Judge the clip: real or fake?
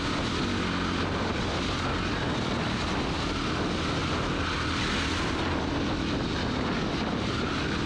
real